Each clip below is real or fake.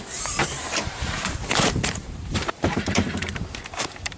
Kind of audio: fake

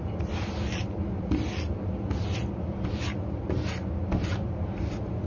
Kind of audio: real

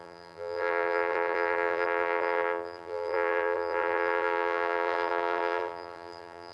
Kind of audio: fake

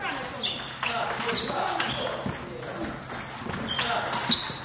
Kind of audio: real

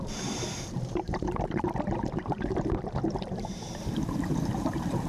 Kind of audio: fake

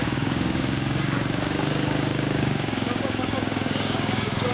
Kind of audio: fake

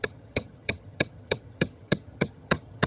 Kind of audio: fake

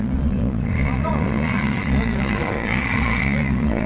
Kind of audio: fake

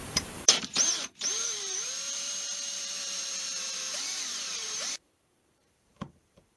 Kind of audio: fake